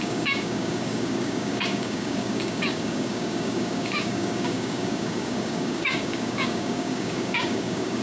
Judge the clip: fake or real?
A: fake